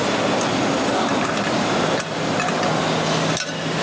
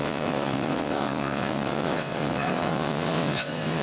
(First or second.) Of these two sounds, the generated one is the second